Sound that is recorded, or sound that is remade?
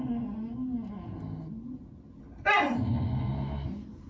recorded